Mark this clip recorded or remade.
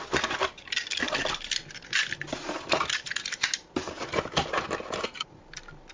recorded